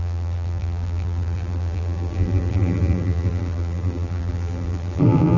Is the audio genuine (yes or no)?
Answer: no